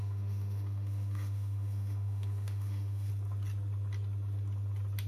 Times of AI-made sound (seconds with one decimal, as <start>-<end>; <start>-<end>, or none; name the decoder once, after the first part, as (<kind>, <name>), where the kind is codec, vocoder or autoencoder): 0.0-3.1 (autoencoder, DAC-VAE)